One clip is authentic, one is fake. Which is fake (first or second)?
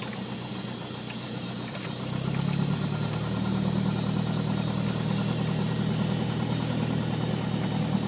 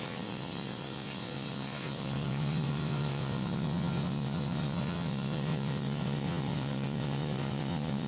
second